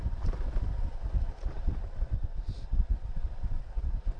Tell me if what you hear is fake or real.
real